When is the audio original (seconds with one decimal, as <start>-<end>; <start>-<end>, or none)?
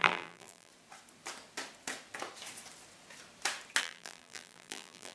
0.7-3.8